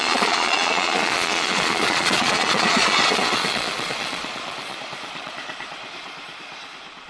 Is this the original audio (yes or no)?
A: no